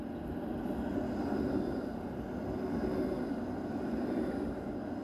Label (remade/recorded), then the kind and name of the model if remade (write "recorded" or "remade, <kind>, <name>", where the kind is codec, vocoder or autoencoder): recorded